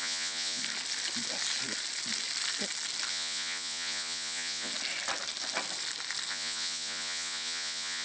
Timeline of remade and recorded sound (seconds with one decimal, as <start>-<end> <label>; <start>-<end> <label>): 0.0-0.6 remade; 0.6-3.1 recorded; 3.1-4.7 remade; 4.7-6.3 recorded; 6.3-8.0 remade